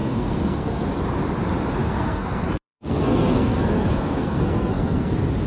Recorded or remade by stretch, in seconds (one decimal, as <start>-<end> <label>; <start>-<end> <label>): 0.0-0.9 remade; 0.9-1.8 recorded; 1.8-5.1 remade; 5.1-5.5 recorded